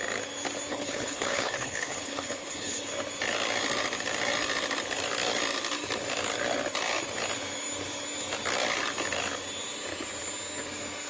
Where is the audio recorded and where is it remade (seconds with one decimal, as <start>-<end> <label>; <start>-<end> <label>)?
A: 0.0-0.7 recorded; 0.7-2.9 remade; 2.9-11.1 recorded